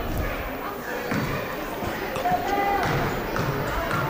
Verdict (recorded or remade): recorded